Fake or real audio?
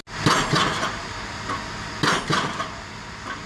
real